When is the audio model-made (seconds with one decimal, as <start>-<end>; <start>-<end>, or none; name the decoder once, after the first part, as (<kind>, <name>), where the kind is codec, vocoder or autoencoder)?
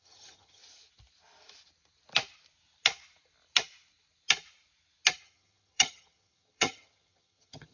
0.0-0.6 (vocoder, HiFi-GAN); 5.2-7.7